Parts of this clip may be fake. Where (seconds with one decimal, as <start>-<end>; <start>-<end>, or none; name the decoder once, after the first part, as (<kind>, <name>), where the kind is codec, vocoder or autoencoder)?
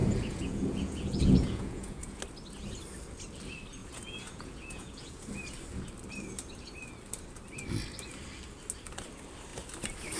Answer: 0.0-2.2 (vocoder, Vocos); 3.8-5.3